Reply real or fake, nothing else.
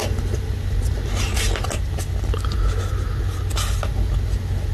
real